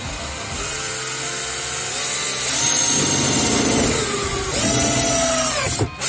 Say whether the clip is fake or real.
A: real